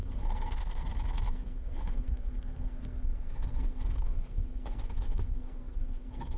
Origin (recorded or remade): remade